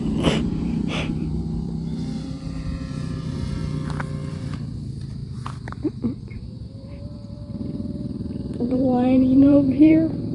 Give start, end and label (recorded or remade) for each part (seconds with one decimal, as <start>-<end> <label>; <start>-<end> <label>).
0.0-3.6 remade; 3.6-4.3 recorded; 4.3-10.3 remade